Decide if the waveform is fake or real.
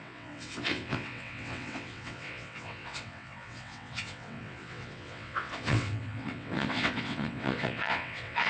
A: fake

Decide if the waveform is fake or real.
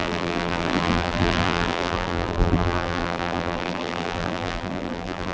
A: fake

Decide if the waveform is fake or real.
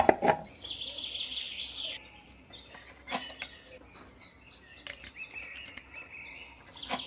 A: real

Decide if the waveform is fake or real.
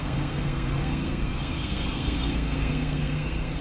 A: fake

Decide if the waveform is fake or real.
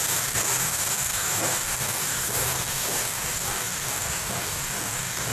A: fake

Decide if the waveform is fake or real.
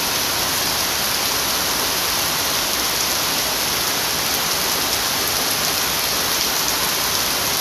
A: real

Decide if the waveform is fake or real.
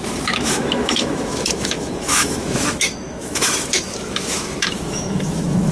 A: fake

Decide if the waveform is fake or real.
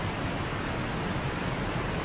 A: real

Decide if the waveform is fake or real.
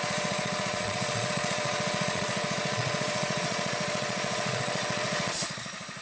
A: fake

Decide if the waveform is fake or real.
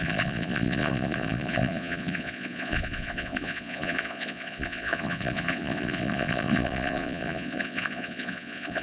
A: fake